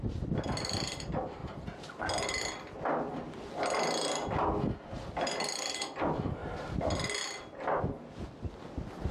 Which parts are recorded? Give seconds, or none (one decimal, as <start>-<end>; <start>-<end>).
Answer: 0.0-9.1